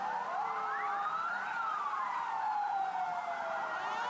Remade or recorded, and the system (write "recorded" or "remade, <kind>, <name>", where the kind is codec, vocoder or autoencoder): recorded